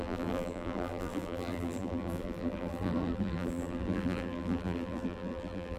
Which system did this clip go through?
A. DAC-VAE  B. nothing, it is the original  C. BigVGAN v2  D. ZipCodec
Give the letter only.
C